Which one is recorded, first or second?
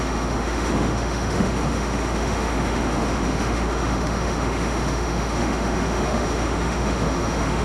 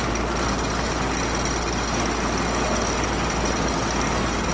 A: second